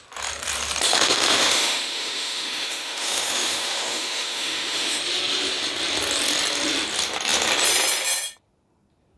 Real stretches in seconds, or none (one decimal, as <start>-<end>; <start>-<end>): 0.0-0.9; 5.0-9.2